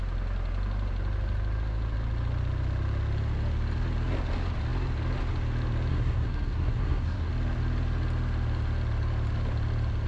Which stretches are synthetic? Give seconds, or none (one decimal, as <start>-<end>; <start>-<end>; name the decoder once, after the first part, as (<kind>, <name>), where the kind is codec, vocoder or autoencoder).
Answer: 5.9-7.3 (codec, SNAC)